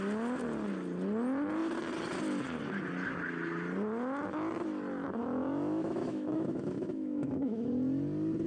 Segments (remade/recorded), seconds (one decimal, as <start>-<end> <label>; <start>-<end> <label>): 0.0-5.2 recorded; 5.2-7.7 remade; 7.7-8.5 recorded